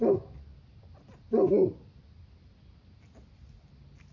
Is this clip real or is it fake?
real